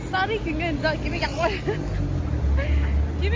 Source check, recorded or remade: recorded